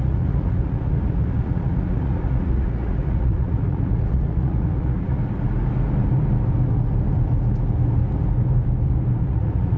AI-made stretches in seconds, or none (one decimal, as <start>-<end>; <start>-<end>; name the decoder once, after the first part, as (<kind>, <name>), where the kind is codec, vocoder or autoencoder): 0.0-5.2 (vocoder, Vocos); 9.2-9.8